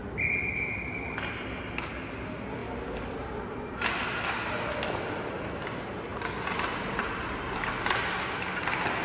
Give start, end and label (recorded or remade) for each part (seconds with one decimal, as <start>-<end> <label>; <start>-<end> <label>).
0.0-9.0 recorded